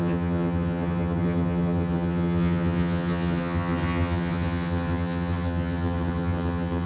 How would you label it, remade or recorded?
remade